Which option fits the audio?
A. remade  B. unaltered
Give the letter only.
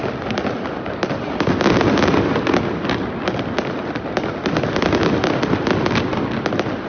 B